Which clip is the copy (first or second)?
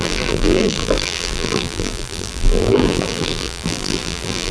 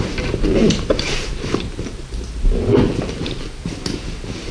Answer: first